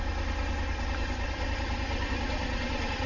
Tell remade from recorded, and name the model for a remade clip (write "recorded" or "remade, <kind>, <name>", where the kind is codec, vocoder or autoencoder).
recorded